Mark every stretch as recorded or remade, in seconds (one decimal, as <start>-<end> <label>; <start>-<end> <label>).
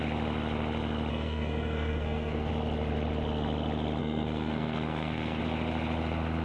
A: 0.0-1.1 recorded; 1.1-2.5 remade; 2.5-4.0 recorded; 4.0-5.4 remade; 5.4-6.4 recorded